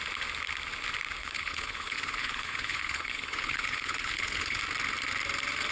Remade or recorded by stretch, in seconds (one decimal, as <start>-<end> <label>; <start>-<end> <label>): 0.0-1.2 recorded; 1.2-4.6 remade; 4.6-5.7 recorded